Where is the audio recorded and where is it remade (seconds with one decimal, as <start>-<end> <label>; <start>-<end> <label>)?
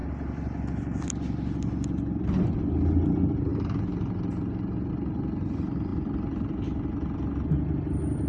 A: 0.0-8.3 recorded